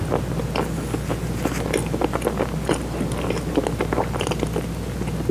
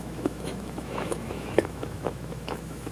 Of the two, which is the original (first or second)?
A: first